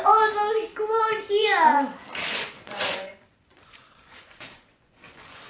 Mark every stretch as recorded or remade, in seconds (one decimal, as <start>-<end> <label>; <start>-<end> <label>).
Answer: 0.0-0.7 recorded; 0.7-1.2 remade; 1.2-2.3 recorded; 2.3-5.5 remade